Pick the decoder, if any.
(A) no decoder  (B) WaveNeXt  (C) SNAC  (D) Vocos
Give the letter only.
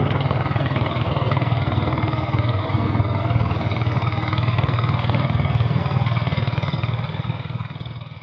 C